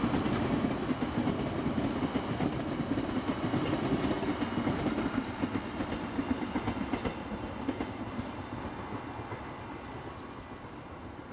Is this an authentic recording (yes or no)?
yes